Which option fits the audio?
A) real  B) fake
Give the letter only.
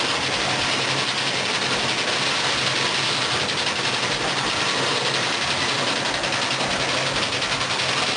A